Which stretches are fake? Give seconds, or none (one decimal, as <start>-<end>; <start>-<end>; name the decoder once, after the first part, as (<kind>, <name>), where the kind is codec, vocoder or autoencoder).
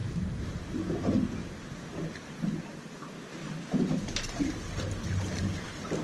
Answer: 0.0-0.7 (vocoder, BigVGAN v2); 1.4-2.1; 3.4-4.9